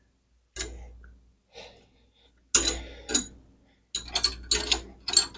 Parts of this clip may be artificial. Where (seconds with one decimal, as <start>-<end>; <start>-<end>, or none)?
none